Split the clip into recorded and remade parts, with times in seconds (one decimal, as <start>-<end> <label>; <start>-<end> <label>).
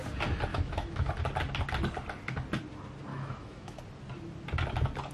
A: 0.0-0.5 recorded; 0.5-1.1 remade; 1.1-3.1 recorded; 3.1-3.8 remade; 3.8-5.1 recorded